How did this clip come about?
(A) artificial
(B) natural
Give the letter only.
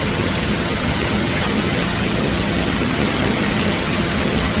A